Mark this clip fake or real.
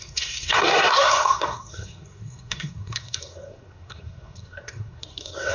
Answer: fake